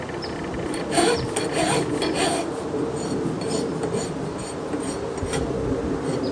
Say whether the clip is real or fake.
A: real